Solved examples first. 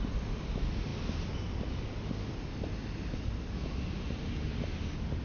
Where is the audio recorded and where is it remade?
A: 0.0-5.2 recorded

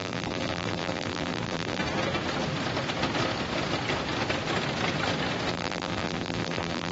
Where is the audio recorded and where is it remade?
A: 0.0-1.8 remade; 1.8-5.5 recorded; 5.5-6.9 remade

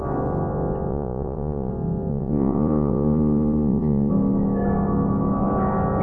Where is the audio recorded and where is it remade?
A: 0.0-0.9 recorded; 0.9-1.7 remade; 1.7-2.1 recorded; 2.1-4.1 remade; 4.1-6.0 recorded

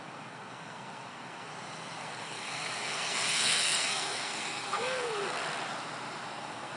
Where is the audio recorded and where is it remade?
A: 0.0-1.5 remade; 1.5-2.0 recorded; 2.0-5.4 remade; 5.4-6.3 recorded; 6.3-6.8 remade

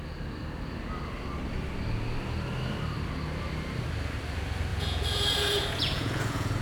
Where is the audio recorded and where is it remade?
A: 0.0-4.7 recorded; 4.7-6.6 remade